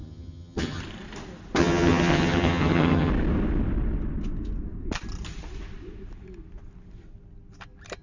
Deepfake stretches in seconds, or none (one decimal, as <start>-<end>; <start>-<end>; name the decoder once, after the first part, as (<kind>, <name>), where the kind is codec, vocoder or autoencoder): 0.0-0.8 (vocoder, HiFi-GAN); 1.6-3.1